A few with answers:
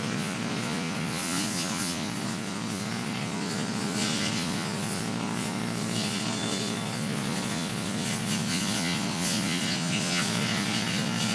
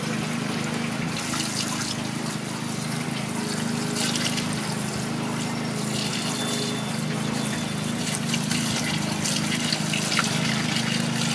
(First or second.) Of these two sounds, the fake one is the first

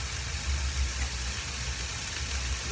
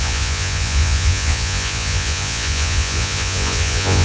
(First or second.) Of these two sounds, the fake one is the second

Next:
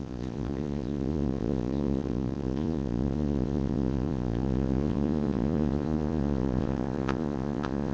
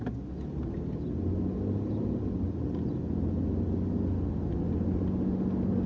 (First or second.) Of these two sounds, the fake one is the first